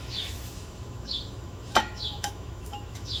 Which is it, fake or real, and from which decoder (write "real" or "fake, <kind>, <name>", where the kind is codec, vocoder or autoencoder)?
fake, autoencoder, DAC-VAE